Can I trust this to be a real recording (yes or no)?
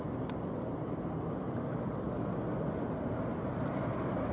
yes